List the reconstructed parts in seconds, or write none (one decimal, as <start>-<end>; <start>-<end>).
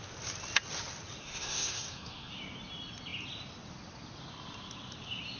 1.2-2.3